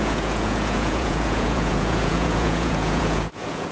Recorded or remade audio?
remade